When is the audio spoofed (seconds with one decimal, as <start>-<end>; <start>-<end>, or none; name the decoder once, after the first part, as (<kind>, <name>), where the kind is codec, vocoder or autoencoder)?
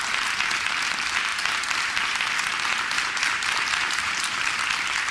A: 1.3-2.2 (vocoder, BigVGAN v2); 2.7-4.4